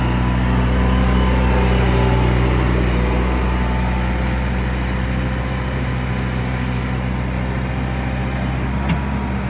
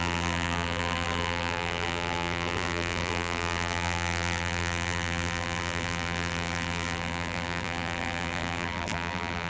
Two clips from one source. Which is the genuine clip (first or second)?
first